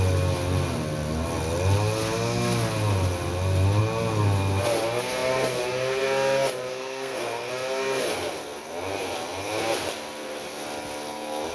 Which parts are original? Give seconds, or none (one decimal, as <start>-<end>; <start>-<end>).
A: 0.0-6.7; 7.5-11.5